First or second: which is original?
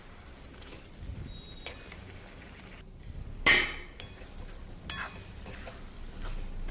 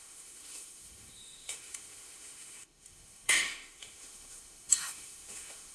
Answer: first